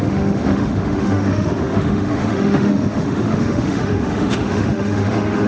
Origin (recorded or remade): remade